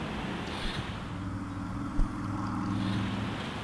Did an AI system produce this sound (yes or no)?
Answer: no